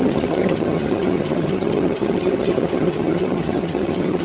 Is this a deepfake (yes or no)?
yes